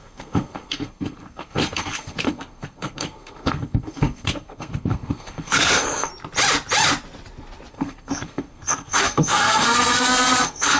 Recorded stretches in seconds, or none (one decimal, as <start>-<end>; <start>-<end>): 6.1-7.7